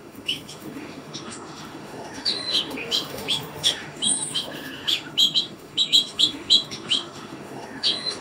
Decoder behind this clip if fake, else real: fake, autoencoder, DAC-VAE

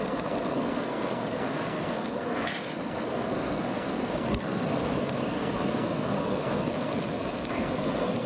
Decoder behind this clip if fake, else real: fake, codec, SNAC